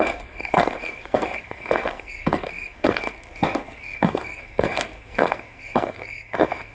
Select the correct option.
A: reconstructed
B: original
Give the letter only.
A